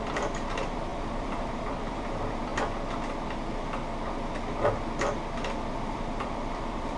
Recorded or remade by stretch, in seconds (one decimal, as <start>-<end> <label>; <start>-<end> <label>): 0.0-2.5 remade; 2.5-5.7 recorded; 5.7-7.0 remade